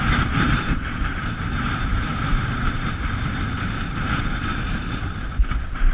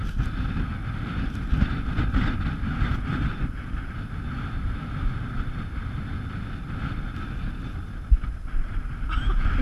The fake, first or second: first